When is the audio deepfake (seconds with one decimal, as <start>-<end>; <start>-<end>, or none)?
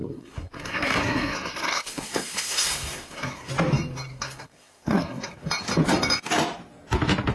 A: 0.0-3.5; 4.1-5.5